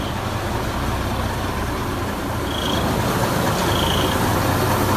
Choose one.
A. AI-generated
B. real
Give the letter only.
B